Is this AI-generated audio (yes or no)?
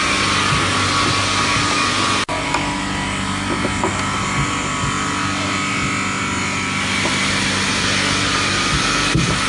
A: no